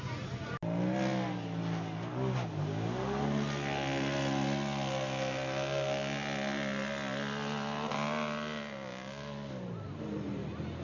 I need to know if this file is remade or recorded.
recorded